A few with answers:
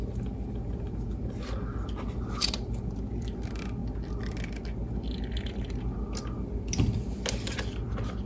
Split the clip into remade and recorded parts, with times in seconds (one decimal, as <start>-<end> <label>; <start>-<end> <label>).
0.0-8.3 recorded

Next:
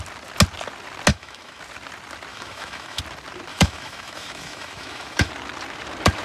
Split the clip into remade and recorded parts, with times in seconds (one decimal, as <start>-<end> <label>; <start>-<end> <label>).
0.0-1.1 recorded; 1.1-1.6 remade; 1.6-2.3 recorded; 2.3-3.0 remade; 3.0-3.5 recorded; 3.5-5.3 remade; 5.3-6.2 recorded

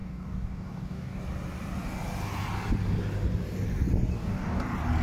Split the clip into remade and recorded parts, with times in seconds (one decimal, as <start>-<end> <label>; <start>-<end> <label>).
0.0-1.2 remade; 1.2-4.1 recorded; 4.1-4.6 remade; 4.6-5.0 recorded

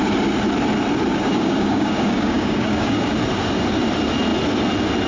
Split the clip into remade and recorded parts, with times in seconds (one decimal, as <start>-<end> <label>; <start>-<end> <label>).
0.0-1.1 recorded; 1.1-3.1 remade; 3.1-5.1 recorded